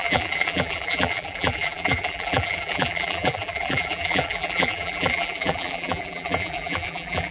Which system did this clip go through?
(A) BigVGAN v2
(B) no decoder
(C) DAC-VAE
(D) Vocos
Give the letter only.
A